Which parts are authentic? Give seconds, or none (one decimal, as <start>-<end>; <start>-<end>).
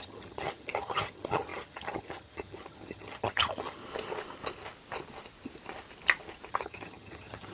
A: 3.8-6.5